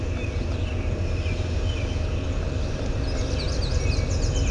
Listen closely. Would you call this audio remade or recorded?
recorded